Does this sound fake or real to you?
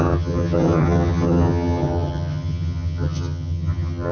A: fake